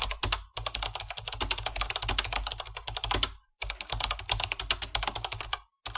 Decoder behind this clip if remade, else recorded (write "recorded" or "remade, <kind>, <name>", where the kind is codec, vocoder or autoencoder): recorded